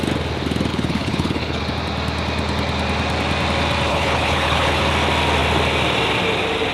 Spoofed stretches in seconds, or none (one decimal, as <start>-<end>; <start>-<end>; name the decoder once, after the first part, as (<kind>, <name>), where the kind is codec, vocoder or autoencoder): 0.7-1.6 (codec, HILCodec); 3.9-4.8